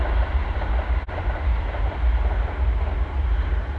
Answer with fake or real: real